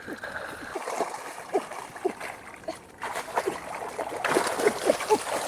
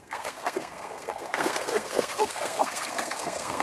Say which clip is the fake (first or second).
second